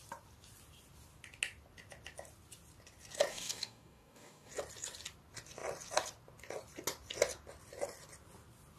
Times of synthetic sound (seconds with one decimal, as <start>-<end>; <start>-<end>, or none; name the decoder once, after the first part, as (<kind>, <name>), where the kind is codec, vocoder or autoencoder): 3.3-4.5 (codec, DAC)